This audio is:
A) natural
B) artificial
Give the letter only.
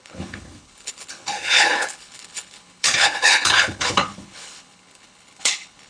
B